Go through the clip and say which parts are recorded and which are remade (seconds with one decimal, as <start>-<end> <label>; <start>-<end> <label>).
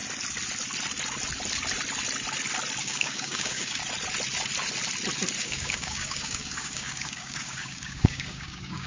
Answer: 0.0-2.8 recorded; 2.8-3.8 remade; 3.8-5.4 recorded; 5.4-8.9 remade